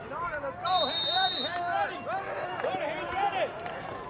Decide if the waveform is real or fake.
fake